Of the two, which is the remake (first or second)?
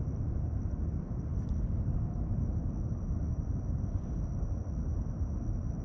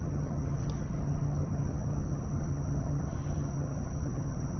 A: second